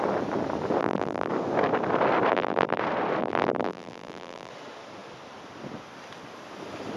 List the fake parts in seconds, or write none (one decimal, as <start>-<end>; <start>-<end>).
0.8-1.3; 2.3-2.8; 3.2-4.5